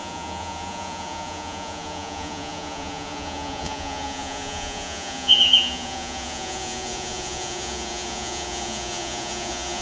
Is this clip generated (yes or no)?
yes